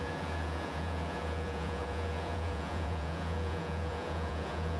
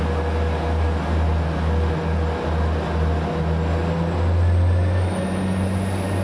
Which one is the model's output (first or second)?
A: first